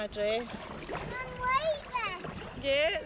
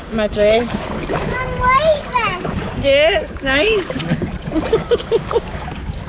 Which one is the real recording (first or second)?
first